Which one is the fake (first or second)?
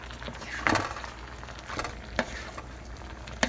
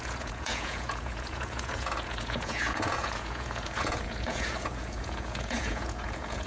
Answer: second